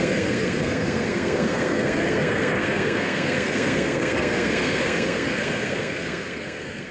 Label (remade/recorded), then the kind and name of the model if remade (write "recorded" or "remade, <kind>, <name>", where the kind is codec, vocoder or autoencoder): remade, codec, SNAC